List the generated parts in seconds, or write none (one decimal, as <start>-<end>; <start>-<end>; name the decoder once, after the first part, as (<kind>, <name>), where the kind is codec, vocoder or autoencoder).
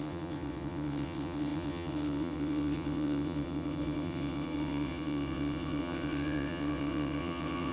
0.0-7.7 (vocoder, WaveNeXt)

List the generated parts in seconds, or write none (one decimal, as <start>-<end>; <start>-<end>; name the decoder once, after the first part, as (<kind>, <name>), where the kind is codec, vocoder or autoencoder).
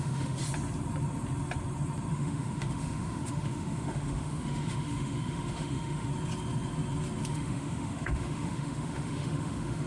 0.0-0.4 (autoencoder, DAC-VAE); 2.1-6.1; 7.3-9.9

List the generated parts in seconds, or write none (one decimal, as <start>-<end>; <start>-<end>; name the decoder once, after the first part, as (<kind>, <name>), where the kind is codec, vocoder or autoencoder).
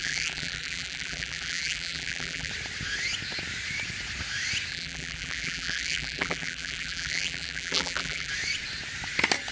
0.0-2.5 (vocoder, BigVGAN v2); 4.7-8.3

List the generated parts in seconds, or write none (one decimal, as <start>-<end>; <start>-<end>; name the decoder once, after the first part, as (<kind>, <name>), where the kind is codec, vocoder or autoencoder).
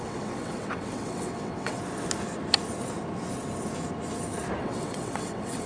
0.0-1.8 (vocoder, WaveNeXt); 4.6-5.7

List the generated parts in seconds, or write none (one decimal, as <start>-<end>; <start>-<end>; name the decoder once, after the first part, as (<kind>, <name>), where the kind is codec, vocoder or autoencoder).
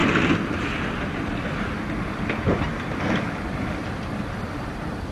2.0-2.7 (vocoder, BigVGAN v2); 4.6-5.1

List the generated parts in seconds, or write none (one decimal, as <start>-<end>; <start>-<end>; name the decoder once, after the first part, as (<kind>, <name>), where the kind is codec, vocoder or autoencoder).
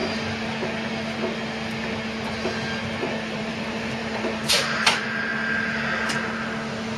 3.0-5.3 (vocoder, BigVGAN v2)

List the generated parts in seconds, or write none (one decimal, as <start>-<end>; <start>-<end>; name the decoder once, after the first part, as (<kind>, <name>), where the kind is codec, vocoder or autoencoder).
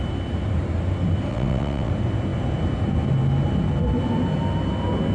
1.3-1.9 (vocoder, WaveNeXt)